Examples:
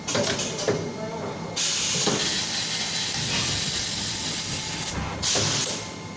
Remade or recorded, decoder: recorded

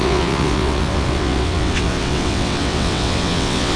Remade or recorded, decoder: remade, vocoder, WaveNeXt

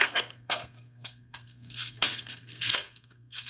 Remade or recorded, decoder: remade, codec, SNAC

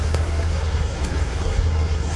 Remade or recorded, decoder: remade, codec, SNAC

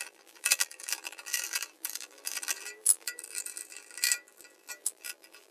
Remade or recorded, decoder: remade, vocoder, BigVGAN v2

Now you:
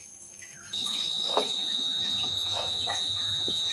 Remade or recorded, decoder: remade, autoencoder, DAC-VAE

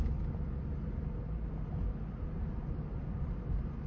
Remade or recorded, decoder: recorded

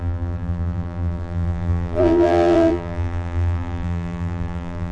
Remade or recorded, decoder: remade, vocoder, BigVGAN v2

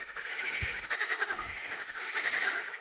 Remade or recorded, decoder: remade, autoencoder, DAC-VAE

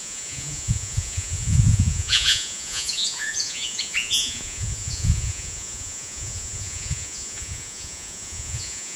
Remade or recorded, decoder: remade, vocoder, Vocos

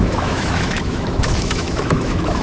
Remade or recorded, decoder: remade, autoencoder, DAC-VAE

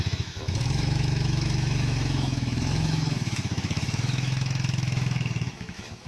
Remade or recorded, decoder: remade, autoencoder, DAC-VAE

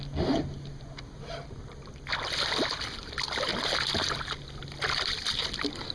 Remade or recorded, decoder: recorded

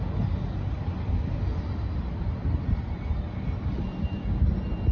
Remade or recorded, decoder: recorded